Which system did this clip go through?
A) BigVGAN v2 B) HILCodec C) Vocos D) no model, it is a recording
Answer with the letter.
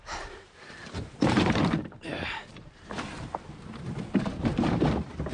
A